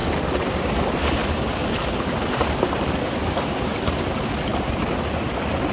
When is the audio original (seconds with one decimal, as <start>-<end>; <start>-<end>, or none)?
0.0-5.7